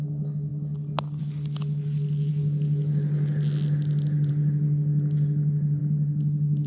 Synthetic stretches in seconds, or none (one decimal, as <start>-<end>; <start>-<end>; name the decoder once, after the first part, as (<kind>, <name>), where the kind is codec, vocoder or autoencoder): none